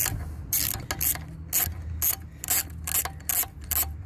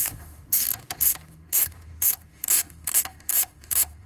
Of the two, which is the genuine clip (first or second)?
first